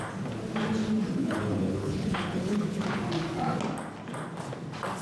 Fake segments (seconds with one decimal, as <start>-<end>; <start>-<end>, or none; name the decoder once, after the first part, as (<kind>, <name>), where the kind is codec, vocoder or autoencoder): 1.2-3.0 (codec, HILCodec)